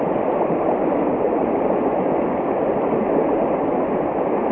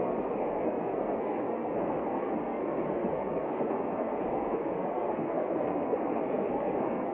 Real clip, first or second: first